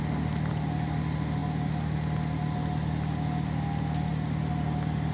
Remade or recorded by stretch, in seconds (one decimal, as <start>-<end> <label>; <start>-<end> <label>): 0.0-5.1 recorded